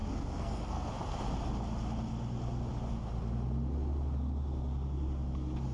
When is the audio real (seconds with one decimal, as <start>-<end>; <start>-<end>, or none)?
0.9-5.7